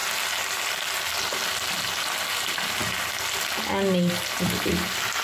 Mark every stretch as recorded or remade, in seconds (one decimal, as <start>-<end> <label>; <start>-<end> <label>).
0.0-5.2 recorded